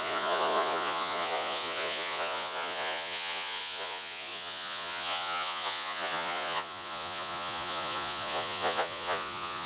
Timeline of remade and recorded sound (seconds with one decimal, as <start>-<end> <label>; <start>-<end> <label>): 0.0-9.7 remade